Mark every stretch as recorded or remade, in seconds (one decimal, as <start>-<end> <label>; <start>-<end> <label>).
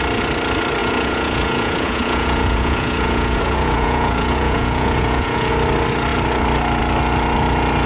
0.0-0.8 recorded; 0.8-5.5 remade; 5.5-7.9 recorded